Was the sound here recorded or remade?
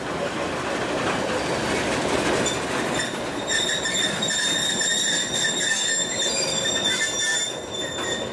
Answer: recorded